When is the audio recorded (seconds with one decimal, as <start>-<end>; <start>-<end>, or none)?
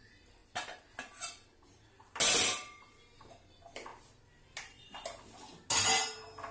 0.0-6.5